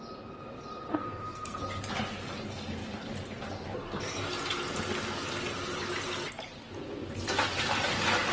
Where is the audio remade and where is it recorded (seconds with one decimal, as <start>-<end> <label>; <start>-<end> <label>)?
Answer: 0.0-0.9 recorded; 0.9-1.6 remade; 1.6-8.3 recorded